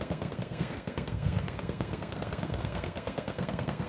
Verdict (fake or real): fake